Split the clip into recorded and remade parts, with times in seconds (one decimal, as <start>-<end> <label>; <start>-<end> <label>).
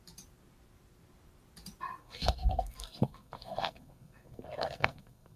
0.0-2.0 recorded; 2.0-5.4 remade